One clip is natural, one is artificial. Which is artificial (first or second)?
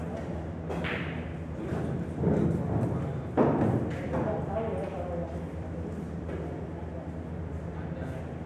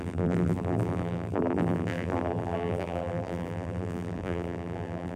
second